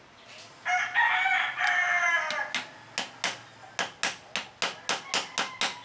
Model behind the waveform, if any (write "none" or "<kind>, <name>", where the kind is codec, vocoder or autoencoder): none